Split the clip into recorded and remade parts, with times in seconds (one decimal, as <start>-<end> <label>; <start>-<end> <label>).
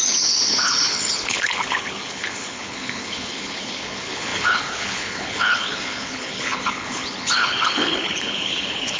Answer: 0.0-9.0 remade